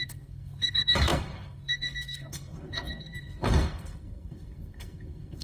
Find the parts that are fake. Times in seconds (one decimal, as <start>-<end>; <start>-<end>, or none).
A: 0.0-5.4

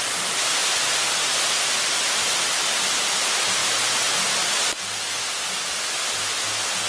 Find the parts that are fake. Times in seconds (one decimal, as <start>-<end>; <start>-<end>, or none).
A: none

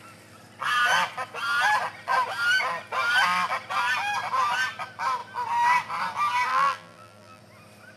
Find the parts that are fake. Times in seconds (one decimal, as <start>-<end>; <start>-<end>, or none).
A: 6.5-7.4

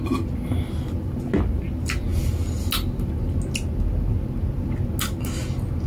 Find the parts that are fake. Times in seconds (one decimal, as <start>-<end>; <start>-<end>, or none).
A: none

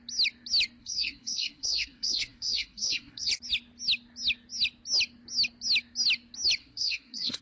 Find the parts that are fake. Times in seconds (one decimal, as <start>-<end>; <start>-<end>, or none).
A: 0.8-3.3; 6.6-7.4

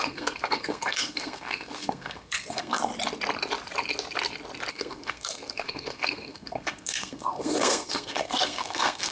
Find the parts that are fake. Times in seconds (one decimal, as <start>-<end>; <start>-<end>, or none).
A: 0.0-2.9; 4.7-9.1

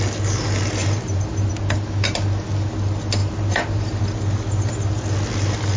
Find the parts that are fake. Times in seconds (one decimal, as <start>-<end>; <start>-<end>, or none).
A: 0.8-1.5; 3.2-4.0

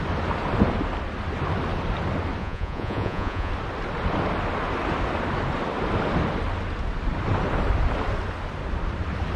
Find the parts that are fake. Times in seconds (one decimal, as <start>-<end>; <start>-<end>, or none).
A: 2.4-3.5